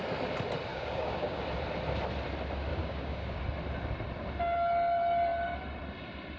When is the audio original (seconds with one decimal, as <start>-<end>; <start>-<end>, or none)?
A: 0.0-0.7; 1.4-2.7; 3.4-6.4